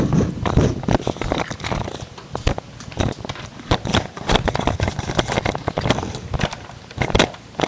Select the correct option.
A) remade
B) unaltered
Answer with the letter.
B